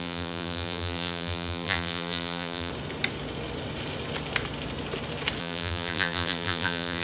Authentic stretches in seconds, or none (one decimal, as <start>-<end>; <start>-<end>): 2.7-5.4